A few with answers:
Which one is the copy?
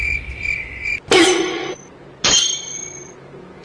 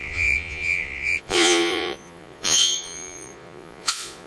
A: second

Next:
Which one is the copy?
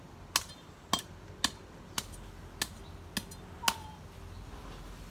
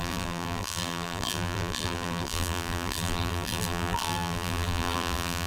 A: second